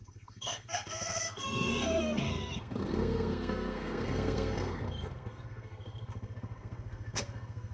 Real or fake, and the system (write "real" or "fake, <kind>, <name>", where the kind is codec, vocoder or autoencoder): fake, codec, SNAC